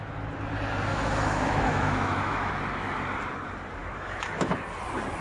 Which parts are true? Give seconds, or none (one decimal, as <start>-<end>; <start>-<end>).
0.0-0.9; 2.5-3.8; 4.6-5.2